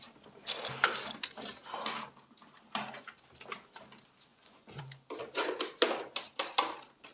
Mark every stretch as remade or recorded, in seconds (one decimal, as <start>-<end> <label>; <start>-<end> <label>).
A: 0.0-4.3 recorded; 4.3-4.8 remade; 4.8-7.1 recorded